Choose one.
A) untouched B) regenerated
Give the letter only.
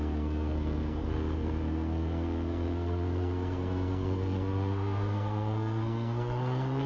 B